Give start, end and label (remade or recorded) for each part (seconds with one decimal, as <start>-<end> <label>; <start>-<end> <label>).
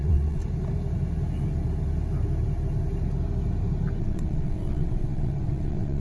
0.0-0.4 remade; 0.4-4.0 recorded; 4.0-6.0 remade